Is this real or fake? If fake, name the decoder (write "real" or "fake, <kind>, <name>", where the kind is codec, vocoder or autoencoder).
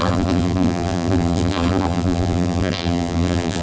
fake, vocoder, BigVGAN v2